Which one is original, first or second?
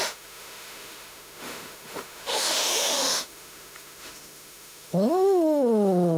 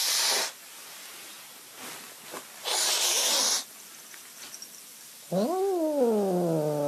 second